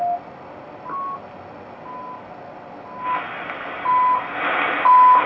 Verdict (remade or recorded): recorded